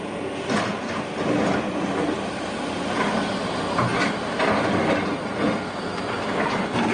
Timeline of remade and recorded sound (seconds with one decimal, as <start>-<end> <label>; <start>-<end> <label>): 0.0-6.9 recorded